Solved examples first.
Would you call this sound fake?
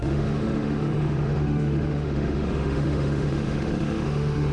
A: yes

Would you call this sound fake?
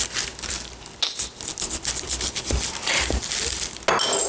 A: no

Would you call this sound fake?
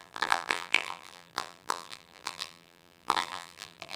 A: yes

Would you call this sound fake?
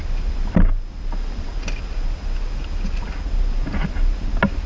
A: no